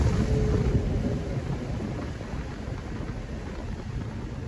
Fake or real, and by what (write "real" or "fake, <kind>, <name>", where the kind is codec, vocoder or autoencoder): real